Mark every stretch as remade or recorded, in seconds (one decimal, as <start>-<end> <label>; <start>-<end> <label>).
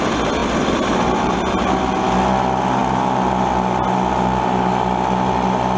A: 0.0-0.4 recorded; 0.4-1.5 remade; 1.5-5.8 recorded